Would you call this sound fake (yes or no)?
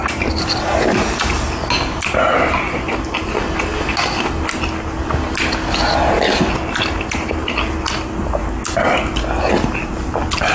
no